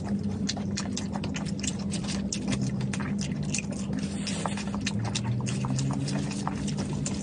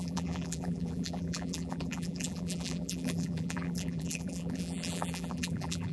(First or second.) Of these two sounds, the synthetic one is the second